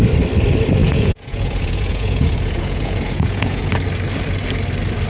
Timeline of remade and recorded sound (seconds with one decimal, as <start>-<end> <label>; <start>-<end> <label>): 0.0-0.8 recorded; 0.8-3.7 remade; 3.7-5.1 recorded